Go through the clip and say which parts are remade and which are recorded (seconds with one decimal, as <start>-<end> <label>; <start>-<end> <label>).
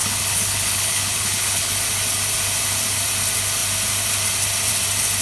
0.0-1.7 remade; 1.7-5.2 recorded